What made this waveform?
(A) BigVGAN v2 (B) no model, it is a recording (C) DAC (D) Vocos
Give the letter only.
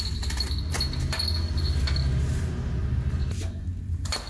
B